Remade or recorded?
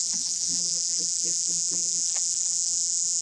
remade